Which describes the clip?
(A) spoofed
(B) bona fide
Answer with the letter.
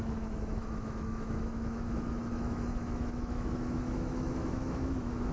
A